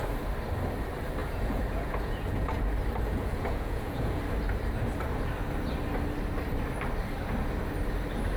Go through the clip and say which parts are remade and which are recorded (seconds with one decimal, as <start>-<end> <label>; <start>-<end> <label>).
0.0-1.2 recorded; 1.2-2.6 remade; 2.6-3.1 recorded; 3.1-4.2 remade; 4.2-8.4 recorded